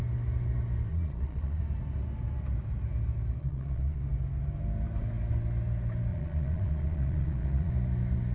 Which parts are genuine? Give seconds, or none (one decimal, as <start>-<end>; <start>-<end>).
0.0-0.9; 1.6-3.4; 4.0-6.1; 7.7-8.3

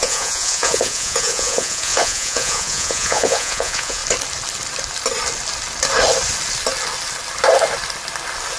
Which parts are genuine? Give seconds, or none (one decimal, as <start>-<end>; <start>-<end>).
4.0-8.6

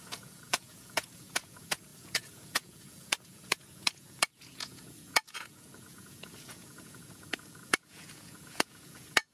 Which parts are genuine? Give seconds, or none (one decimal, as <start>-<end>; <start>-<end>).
none

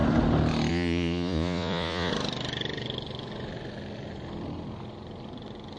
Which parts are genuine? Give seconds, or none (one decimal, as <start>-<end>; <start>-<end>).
0.0-0.7; 2.1-5.8

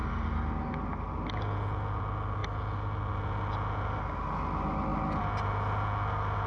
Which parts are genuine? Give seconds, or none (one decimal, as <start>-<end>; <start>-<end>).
0.0-6.5

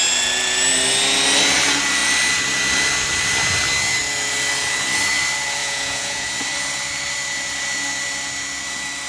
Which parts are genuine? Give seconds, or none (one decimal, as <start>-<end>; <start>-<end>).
0.0-5.6; 6.3-9.1

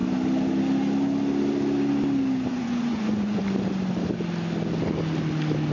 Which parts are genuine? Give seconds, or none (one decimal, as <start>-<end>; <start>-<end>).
0.0-2.5; 3.4-5.7

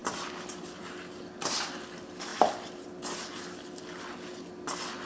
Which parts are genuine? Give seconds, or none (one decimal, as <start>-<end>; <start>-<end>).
0.0-5.1